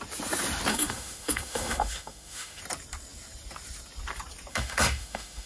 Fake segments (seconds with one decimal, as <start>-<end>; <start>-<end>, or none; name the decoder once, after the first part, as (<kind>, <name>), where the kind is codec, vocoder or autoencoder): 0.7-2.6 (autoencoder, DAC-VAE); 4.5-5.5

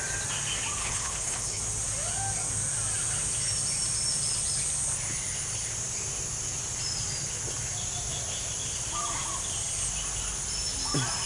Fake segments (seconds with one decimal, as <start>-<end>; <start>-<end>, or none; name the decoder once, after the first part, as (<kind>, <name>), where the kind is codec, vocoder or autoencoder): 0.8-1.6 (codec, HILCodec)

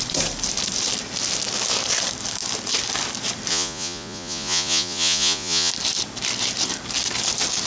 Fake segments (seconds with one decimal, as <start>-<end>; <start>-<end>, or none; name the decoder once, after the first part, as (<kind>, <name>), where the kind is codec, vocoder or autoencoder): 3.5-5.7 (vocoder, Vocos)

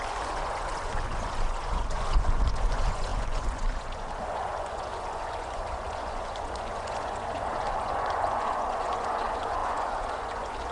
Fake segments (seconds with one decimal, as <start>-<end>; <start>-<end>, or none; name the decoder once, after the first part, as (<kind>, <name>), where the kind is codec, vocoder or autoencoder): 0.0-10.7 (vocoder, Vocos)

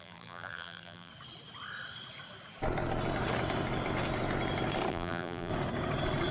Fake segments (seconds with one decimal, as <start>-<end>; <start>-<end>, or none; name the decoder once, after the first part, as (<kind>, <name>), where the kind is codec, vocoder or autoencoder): 0.0-1.1 (vocoder, BigVGAN v2); 4.9-5.5

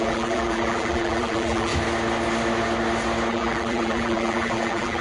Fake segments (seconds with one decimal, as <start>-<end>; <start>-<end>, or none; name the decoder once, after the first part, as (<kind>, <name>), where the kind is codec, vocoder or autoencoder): 0.0-1.7 (vocoder, BigVGAN v2); 3.3-5.0